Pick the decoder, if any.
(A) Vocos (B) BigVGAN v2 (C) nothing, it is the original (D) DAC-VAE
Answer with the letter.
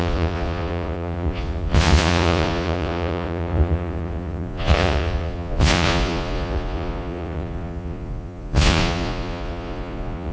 A